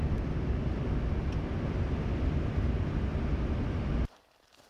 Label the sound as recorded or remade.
recorded